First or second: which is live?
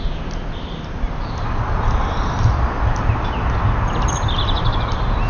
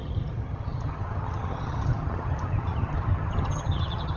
first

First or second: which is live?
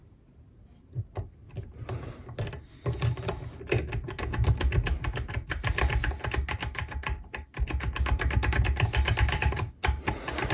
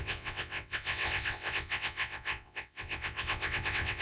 first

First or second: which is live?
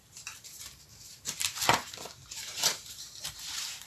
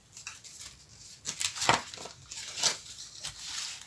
second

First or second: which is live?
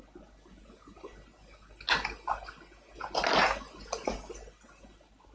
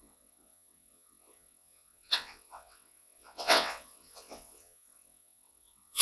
first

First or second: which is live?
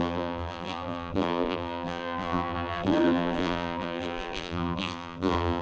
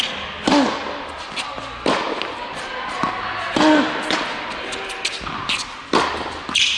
second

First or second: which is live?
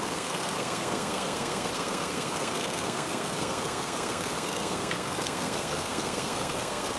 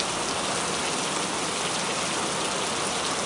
second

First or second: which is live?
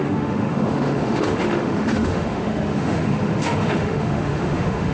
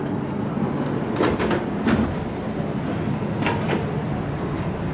second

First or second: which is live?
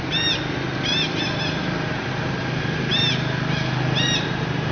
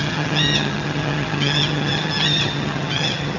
first